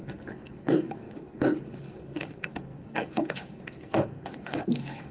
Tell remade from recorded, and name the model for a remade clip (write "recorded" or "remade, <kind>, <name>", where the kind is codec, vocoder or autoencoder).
remade, codec, SNAC